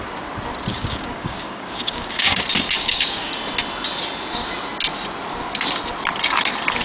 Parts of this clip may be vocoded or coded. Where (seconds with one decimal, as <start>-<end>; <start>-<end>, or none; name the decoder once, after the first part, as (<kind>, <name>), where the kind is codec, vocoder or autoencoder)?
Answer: 0.7-2.4 (codec, DAC); 2.8-3.3